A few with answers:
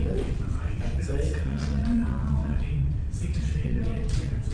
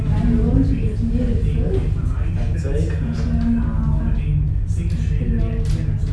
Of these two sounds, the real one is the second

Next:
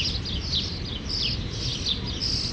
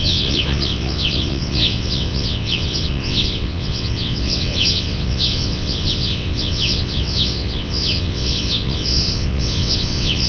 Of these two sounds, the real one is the first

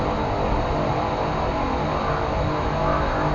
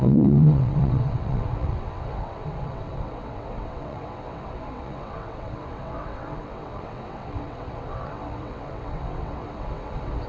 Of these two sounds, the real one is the first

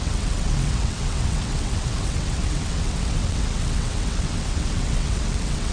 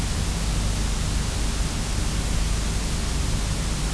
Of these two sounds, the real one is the second